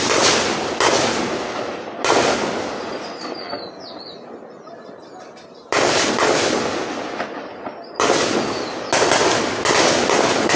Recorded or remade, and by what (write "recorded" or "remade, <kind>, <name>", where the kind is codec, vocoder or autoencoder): recorded